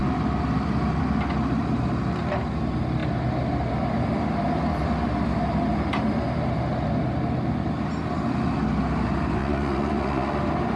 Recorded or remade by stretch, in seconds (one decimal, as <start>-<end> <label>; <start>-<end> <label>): 0.0-9.4 recorded; 9.4-10.4 remade; 10.4-10.8 recorded